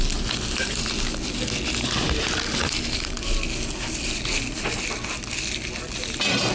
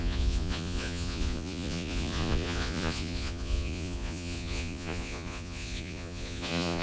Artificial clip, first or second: second